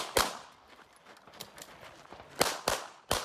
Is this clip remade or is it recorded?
recorded